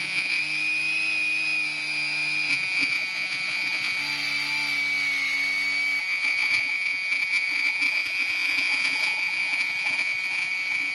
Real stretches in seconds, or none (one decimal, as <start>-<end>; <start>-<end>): 0.4-2.5; 4.0-6.0